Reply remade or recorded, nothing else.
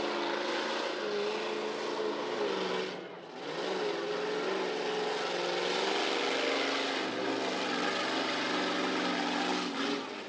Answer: recorded